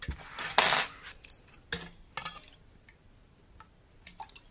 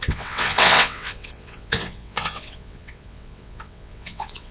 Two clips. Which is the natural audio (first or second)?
first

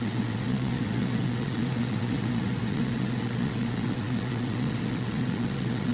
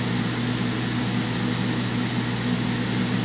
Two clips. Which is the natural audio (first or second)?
second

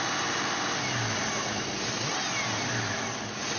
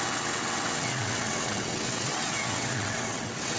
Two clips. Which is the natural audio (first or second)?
first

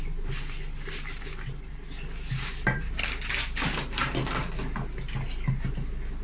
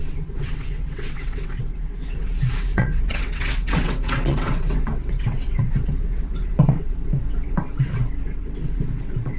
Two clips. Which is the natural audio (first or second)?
first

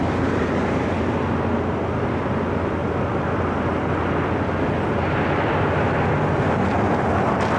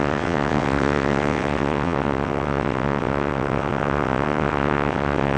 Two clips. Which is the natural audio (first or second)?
first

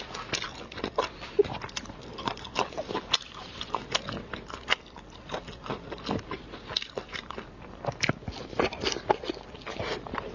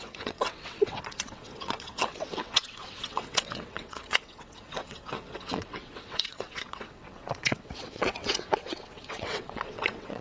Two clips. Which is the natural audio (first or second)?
first